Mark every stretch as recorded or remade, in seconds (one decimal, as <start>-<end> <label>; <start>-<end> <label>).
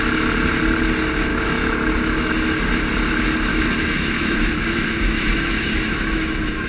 0.0-1.3 recorded; 1.3-2.3 remade; 2.3-3.5 recorded; 3.5-6.7 remade